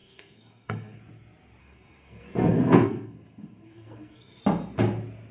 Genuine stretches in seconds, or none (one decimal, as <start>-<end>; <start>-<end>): 1.0-1.6; 4.4-5.3